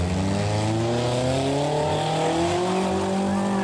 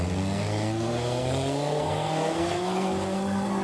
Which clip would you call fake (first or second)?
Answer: second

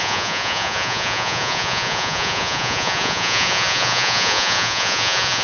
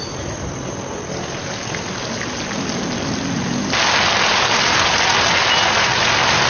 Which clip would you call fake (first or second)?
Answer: first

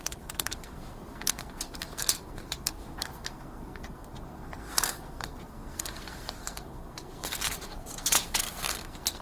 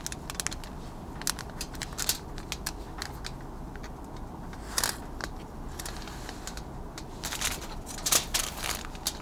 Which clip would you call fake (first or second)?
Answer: first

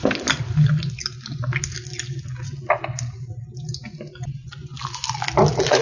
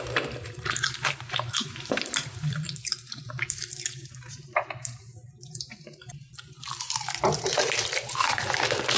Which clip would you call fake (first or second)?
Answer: second